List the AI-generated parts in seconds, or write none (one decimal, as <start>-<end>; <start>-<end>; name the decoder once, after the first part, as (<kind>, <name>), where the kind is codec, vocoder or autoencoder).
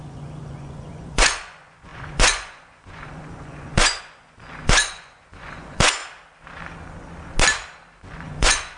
0.0-6.0 (vocoder, Vocos); 8.0-8.8